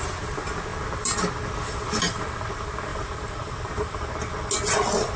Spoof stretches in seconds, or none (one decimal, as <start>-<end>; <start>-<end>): 2.9-4.1